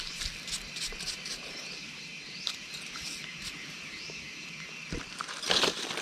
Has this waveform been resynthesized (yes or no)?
no